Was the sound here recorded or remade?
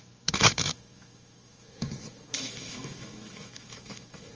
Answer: remade